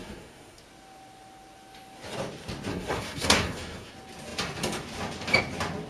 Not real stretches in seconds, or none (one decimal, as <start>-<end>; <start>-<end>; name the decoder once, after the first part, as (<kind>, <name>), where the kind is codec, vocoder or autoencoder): 0.0-0.6 (codec, SNAC); 2.7-3.9